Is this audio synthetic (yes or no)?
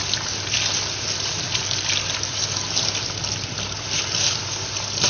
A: no